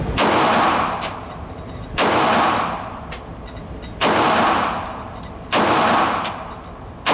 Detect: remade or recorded recorded